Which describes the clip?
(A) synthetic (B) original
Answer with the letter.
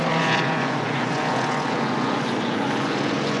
A